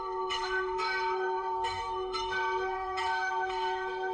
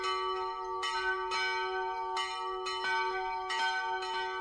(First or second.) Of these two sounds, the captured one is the second